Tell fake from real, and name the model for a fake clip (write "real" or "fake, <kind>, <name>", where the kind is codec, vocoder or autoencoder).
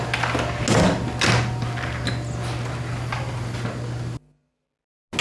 real